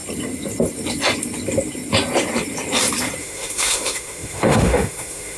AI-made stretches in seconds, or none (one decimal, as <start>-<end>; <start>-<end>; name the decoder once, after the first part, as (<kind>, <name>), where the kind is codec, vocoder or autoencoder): 3.2-5.4 (autoencoder, DAC-VAE)